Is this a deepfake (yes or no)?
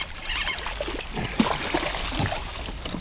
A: no